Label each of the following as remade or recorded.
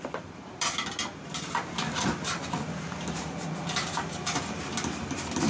recorded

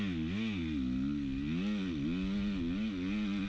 recorded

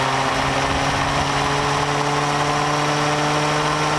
recorded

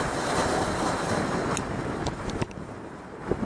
remade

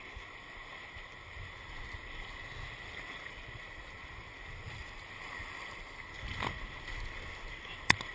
recorded